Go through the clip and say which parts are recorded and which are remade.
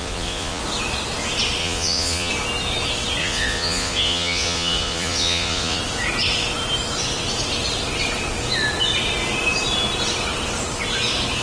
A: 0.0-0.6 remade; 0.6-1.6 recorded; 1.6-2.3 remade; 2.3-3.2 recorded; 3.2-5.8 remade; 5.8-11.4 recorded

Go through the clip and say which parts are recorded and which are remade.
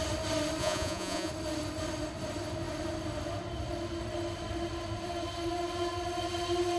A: 0.0-0.6 recorded; 0.6-1.3 remade; 1.3-6.8 recorded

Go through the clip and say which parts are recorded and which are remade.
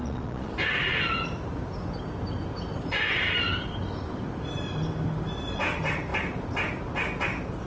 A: 0.0-0.5 remade; 0.5-7.7 recorded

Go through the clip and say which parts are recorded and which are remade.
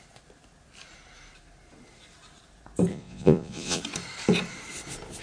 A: 0.0-2.9 recorded; 2.9-3.8 remade; 3.8-5.2 recorded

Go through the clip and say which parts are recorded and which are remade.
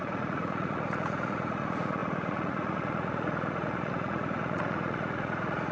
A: 0.0-5.7 remade